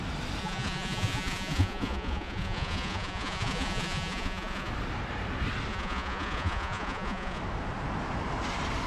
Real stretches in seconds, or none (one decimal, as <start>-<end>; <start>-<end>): 0.0-0.4; 4.7-5.7; 7.4-8.9